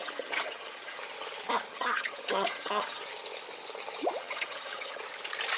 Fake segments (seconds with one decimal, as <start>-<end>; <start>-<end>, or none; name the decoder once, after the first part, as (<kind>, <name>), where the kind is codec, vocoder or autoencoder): 0.0-1.0 (vocoder, HiFi-GAN); 1.7-3.0; 4.2-5.0